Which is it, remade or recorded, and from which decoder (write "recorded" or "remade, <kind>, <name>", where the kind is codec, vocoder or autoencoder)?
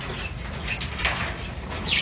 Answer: recorded